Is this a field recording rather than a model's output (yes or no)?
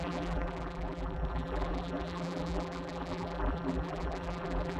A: no